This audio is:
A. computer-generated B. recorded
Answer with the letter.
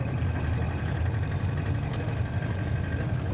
B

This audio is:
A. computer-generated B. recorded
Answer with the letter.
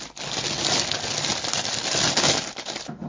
B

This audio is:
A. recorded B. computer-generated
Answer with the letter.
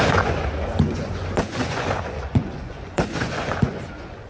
B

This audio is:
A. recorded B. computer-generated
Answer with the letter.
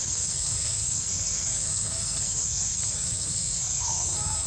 B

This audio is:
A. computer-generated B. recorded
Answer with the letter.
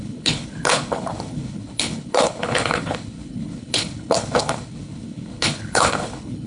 A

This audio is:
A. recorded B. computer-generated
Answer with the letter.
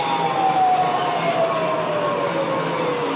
A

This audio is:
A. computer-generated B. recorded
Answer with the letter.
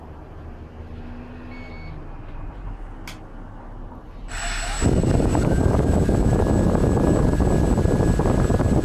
B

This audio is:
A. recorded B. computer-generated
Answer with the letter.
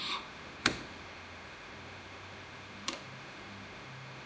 B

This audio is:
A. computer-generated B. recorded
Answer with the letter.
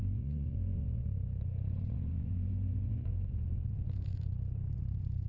A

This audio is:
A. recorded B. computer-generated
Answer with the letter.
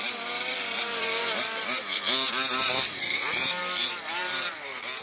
B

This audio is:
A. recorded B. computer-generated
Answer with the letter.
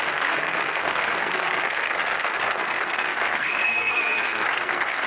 B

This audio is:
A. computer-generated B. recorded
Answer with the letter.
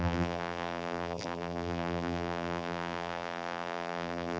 A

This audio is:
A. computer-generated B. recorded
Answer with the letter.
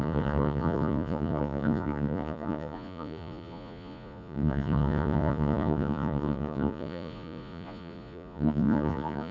A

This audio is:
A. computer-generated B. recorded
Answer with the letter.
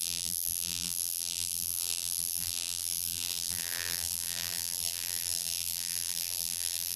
A